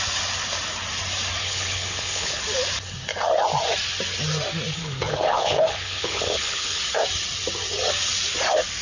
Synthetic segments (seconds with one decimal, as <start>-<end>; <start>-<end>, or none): 1.4-2.4; 4.7-6.8